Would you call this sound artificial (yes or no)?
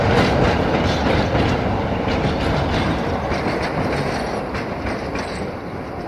no